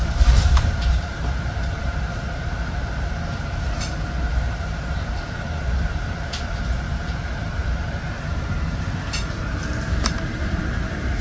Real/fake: fake